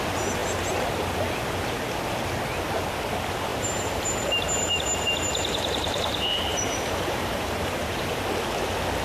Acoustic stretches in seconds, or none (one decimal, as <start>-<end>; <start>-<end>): 0.0-3.5; 8.2-9.0